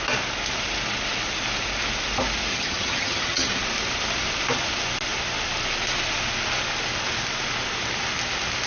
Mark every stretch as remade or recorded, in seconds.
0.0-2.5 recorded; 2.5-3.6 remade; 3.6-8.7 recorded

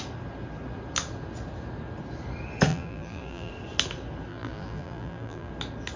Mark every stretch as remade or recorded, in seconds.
0.0-2.7 recorded; 2.7-3.5 remade; 3.5-4.3 recorded; 4.3-5.5 remade; 5.5-6.0 recorded

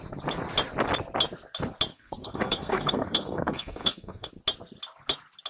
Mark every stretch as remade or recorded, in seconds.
0.0-1.9 recorded; 1.9-4.3 remade; 4.3-5.5 recorded